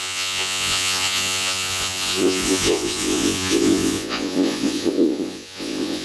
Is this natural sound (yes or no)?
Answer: no